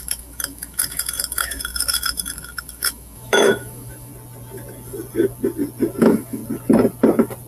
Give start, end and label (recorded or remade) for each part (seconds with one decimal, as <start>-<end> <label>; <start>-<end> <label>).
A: 0.0-4.1 remade; 4.1-6.0 recorded; 6.0-6.4 remade; 6.4-7.5 recorded